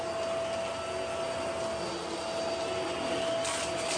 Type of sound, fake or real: real